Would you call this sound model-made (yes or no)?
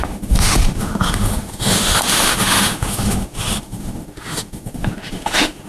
yes